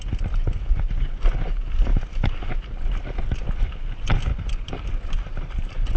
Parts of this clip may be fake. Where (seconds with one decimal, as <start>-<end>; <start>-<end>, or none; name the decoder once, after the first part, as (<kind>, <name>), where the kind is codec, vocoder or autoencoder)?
none